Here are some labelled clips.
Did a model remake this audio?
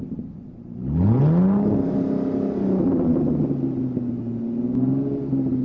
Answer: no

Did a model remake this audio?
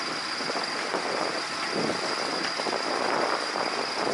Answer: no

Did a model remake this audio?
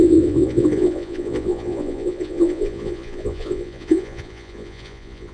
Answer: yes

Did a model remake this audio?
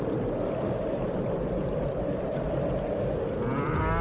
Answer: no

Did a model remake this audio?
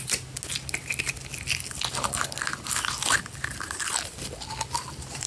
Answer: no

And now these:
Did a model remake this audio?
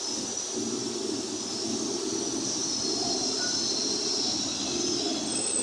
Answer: no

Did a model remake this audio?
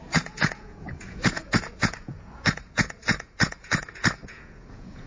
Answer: yes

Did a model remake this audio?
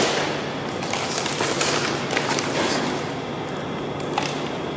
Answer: no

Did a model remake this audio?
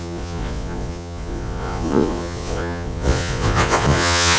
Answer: yes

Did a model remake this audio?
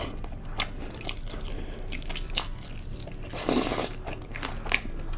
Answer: no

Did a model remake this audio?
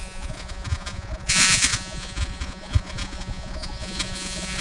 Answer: yes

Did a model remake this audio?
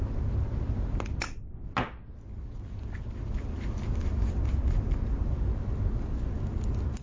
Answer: no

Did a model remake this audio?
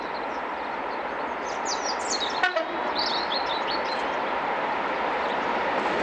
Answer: no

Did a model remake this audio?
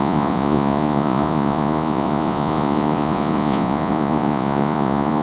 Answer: yes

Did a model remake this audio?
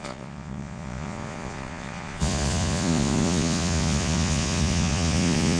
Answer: yes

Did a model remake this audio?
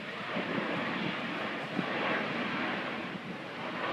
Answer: no